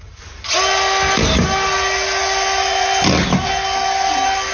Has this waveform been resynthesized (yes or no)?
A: no